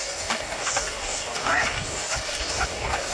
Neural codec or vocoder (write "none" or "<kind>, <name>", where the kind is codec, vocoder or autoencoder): codec, DAC